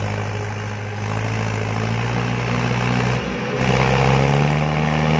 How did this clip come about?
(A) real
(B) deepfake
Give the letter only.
A